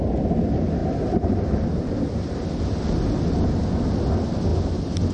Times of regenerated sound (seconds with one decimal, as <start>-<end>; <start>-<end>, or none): 0.8-2.5

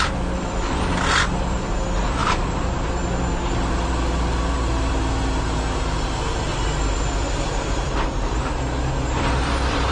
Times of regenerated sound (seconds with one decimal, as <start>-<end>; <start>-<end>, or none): 2.2-2.9; 6.5-8.4

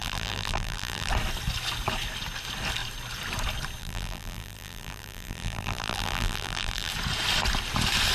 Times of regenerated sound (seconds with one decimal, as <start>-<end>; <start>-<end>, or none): 0.0-1.1; 3.8-6.9

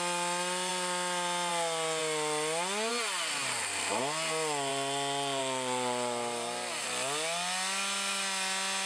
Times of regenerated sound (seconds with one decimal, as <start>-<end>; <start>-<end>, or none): 3.4-4.0

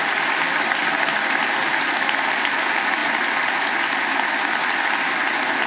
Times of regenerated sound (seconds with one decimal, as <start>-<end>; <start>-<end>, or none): none

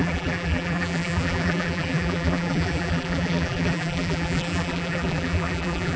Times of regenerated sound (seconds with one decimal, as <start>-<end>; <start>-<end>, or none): 0.0-6.0

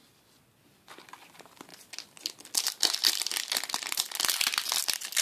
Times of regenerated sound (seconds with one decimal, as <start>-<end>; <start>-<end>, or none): none

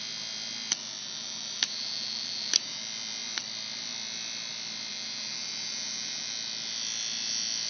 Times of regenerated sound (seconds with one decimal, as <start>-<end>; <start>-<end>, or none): 1.0-2.8; 4.9-6.3